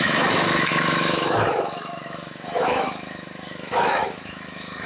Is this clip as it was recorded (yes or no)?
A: no